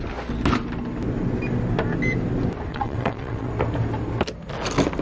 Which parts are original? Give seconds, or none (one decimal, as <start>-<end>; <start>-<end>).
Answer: 0.0-2.7; 3.5-5.0